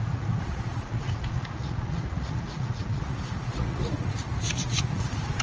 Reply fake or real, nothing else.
fake